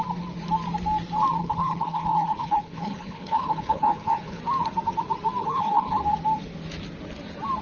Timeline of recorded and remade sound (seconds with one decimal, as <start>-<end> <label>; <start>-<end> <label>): 0.0-1.4 recorded; 1.4-4.4 remade; 4.4-5.4 recorded; 5.4-6.0 remade; 6.0-7.6 recorded